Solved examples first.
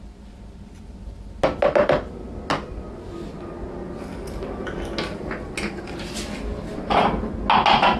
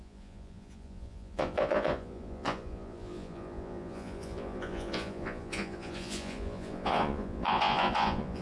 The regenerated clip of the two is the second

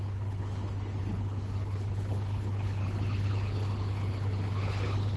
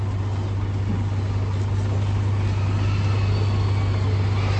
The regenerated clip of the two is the first